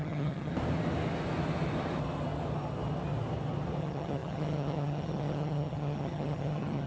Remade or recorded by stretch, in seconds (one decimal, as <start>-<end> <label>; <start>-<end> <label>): 0.0-0.5 remade; 0.5-3.8 recorded; 3.8-6.9 remade